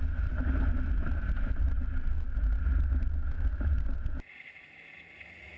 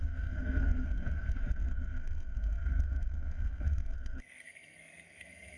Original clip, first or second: first